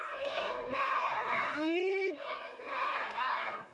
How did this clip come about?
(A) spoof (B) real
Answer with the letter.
A